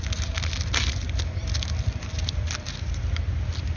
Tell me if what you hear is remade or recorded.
recorded